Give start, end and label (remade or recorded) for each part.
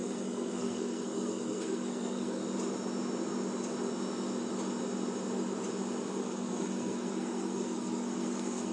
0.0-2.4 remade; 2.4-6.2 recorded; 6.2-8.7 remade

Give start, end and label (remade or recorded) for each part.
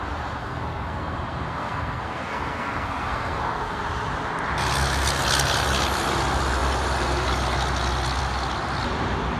0.0-0.4 recorded; 0.4-3.8 remade; 3.8-9.4 recorded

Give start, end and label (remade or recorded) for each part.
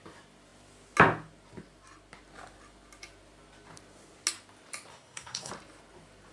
0.0-4.9 recorded; 4.9-5.5 remade; 5.5-6.3 recorded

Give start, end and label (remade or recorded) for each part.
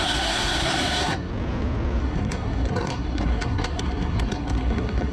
0.0-1.3 remade; 1.3-2.0 recorded; 2.0-5.1 remade